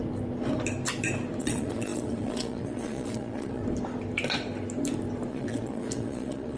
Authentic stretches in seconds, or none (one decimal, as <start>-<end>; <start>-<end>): 0.0-1.4; 3.6-5.3